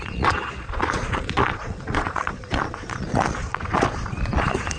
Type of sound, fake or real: fake